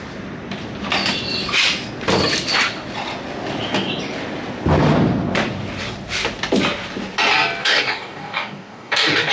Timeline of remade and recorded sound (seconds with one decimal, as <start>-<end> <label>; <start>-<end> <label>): 0.0-7.6 recorded; 7.6-9.3 remade